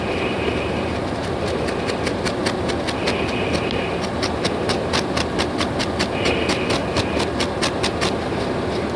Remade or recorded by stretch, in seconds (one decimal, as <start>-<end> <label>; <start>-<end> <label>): 0.0-6.8 recorded; 6.8-7.8 remade; 7.8-9.0 recorded